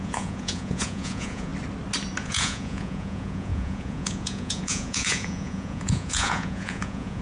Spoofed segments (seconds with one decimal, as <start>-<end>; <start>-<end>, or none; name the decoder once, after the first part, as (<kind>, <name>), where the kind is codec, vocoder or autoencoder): 0.0-1.5 (vocoder, Vocos); 2.2-7.2